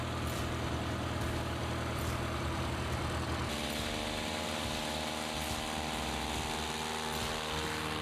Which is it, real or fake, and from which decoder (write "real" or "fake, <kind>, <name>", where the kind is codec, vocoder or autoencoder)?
real